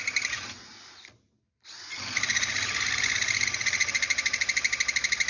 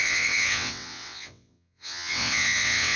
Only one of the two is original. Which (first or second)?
first